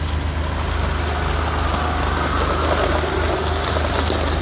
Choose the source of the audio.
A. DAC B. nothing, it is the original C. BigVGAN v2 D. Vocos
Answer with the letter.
B